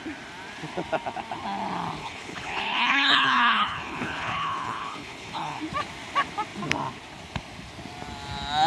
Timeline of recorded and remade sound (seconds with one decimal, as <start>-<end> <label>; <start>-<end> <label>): 0.0-2.0 recorded; 2.0-5.6 remade; 5.6-8.7 recorded